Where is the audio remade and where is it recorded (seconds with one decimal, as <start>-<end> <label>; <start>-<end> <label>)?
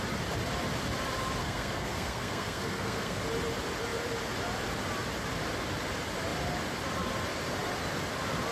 0.0-1.4 recorded; 1.4-3.2 remade; 3.2-8.5 recorded